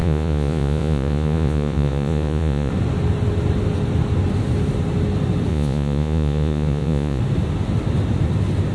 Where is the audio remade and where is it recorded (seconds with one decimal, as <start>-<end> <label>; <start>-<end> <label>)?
0.0-2.7 remade; 2.7-5.5 recorded; 5.5-7.2 remade; 7.2-8.7 recorded